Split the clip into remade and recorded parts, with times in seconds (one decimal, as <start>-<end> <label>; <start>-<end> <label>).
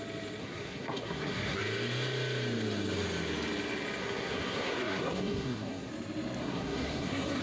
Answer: 0.0-0.4 recorded; 0.4-1.6 remade; 1.6-4.0 recorded; 4.0-5.9 remade; 5.9-6.4 recorded; 6.4-7.4 remade